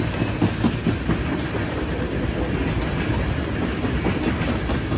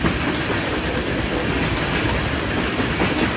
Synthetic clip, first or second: second